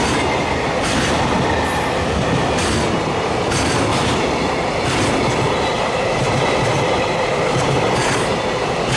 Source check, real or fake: real